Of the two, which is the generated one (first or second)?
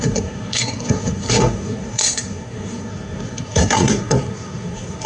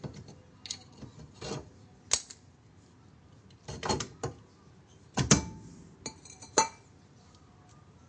first